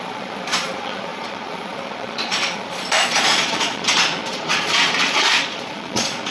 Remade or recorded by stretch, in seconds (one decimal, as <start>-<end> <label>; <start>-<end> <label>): 0.0-6.3 remade